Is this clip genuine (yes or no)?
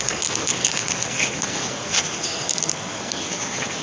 no